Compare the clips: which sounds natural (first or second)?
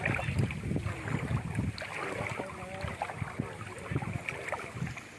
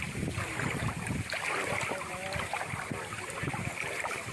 first